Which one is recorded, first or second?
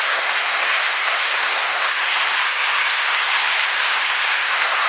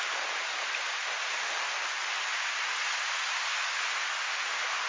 second